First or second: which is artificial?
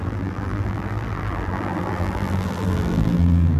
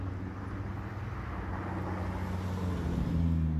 first